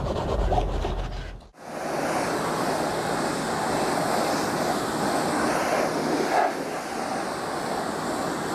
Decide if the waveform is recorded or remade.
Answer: recorded